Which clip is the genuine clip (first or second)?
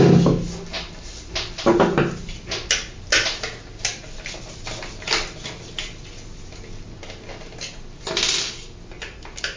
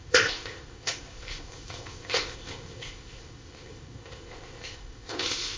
first